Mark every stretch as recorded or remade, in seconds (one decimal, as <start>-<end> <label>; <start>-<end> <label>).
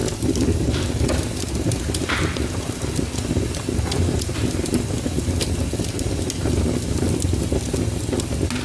0.0-1.8 remade; 1.8-8.6 recorded